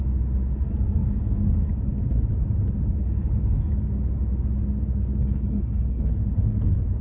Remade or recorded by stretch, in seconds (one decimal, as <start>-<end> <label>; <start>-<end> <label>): 0.0-5.2 recorded; 5.2-6.1 remade; 6.1-7.0 recorded